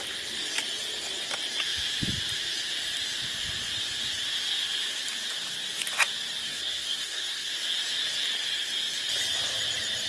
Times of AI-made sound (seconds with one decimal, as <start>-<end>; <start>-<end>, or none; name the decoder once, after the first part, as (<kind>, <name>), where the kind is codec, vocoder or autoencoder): 6.4-7.5 (codec, SNAC)